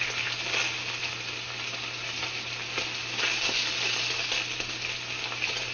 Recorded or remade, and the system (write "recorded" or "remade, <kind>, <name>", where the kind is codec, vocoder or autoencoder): recorded